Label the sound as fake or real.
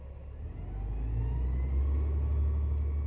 real